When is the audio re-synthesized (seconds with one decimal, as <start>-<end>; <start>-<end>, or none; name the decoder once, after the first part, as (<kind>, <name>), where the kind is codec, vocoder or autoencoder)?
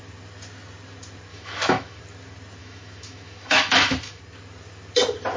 1.3-2.0 (autoencoder, DAC-VAE); 2.6-4.2